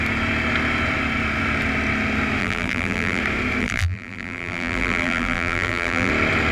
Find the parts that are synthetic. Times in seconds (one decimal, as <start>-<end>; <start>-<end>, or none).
2.4-3.2; 3.6-6.1